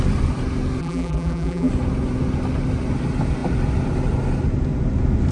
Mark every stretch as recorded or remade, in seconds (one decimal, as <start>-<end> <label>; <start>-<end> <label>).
0.0-0.8 recorded; 0.8-1.7 remade; 1.7-5.3 recorded